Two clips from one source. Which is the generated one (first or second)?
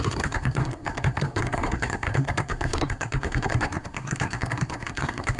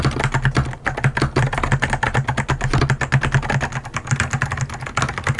first